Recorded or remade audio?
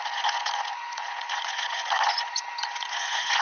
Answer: remade